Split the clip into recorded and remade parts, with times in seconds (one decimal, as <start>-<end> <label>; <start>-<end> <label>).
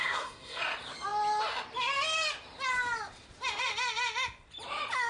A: 0.0-0.6 remade; 0.6-5.1 recorded